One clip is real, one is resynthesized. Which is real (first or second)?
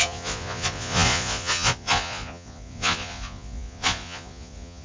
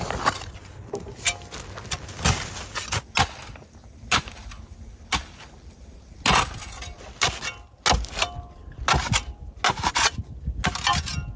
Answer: second